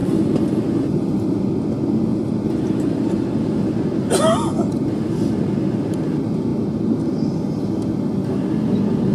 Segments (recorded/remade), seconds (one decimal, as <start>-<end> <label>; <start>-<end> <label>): 0.0-1.4 remade; 1.4-2.1 recorded; 2.1-3.7 remade; 3.7-9.1 recorded